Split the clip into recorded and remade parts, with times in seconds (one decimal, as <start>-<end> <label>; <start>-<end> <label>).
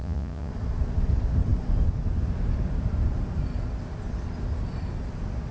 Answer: 0.0-0.5 remade; 0.5-5.5 recorded